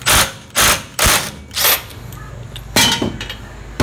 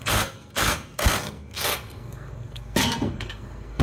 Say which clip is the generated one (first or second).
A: second